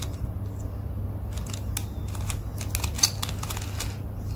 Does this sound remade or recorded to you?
recorded